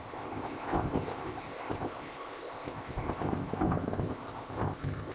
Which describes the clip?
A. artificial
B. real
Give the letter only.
A